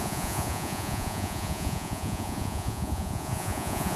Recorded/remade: remade